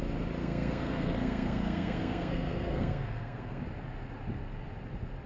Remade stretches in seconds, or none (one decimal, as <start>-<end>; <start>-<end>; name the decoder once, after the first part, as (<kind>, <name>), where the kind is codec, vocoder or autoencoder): 0.4-3.6 (codec, SNAC)